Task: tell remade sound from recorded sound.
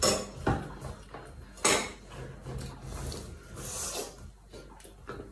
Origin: recorded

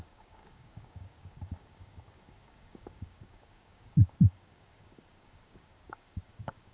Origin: remade